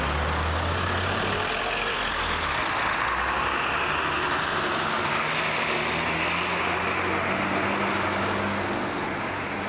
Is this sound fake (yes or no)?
no